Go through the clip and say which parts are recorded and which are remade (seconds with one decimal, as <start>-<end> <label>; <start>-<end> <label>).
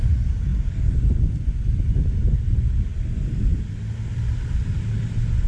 0.0-0.5 recorded; 0.5-2.4 remade; 2.4-5.5 recorded